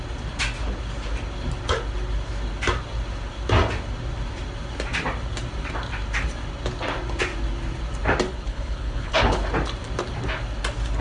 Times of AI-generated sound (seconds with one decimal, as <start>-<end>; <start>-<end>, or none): 8.3-9.4